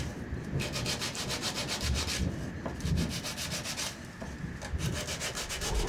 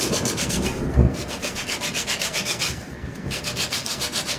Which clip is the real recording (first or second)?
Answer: first